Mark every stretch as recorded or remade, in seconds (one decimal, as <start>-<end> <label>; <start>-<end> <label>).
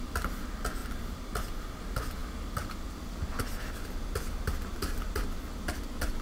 0.0-0.8 recorded; 0.8-1.8 remade; 1.8-6.2 recorded